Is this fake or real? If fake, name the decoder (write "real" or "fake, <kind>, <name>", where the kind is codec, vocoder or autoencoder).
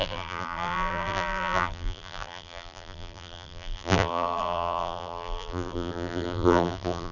fake, vocoder, BigVGAN v2